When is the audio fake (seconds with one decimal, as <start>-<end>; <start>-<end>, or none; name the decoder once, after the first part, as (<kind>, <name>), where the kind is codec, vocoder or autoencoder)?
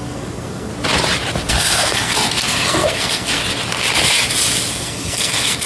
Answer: 0.0-0.7 (codec, SNAC); 1.5-3.4; 4.7-5.7